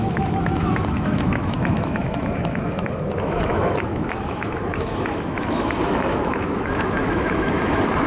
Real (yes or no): no